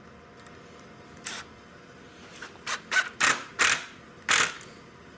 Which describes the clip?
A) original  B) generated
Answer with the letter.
A